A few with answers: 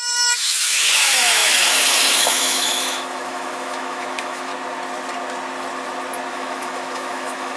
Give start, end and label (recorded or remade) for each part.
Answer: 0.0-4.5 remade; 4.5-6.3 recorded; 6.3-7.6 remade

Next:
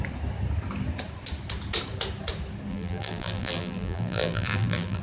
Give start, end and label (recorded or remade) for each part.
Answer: 0.0-2.7 recorded; 2.7-5.0 remade

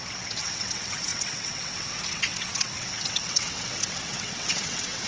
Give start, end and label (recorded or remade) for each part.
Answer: 0.0-5.1 remade

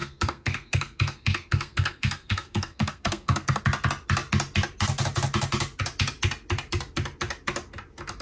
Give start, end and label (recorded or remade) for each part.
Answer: 0.0-3.6 remade; 3.6-8.2 recorded

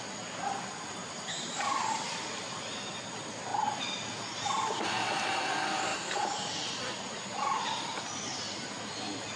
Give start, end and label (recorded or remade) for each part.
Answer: 0.0-1.0 recorded; 1.0-2.0 remade; 2.0-5.9 recorded; 5.9-7.6 remade; 7.6-9.4 recorded

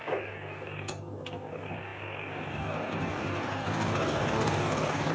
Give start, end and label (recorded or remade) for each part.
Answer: 0.0-5.1 remade

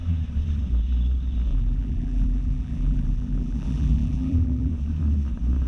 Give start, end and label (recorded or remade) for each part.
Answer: 0.0-1.5 recorded; 1.5-4.7 remade; 4.7-5.7 recorded

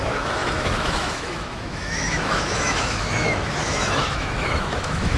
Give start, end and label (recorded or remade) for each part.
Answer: 0.0-5.2 remade